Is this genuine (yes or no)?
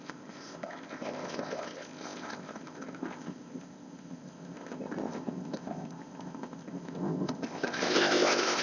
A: no